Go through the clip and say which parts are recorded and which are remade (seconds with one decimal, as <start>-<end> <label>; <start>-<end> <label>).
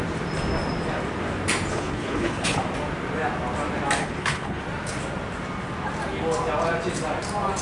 0.0-1.7 recorded; 1.7-2.6 remade; 2.6-4.0 recorded; 4.0-4.6 remade; 4.6-7.6 recorded